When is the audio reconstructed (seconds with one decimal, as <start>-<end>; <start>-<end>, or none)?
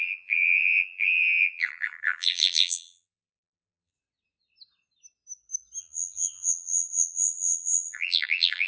0.0-3.9; 5.8-8.7